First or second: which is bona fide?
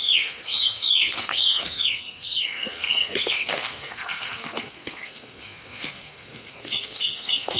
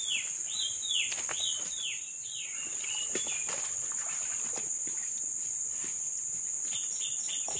second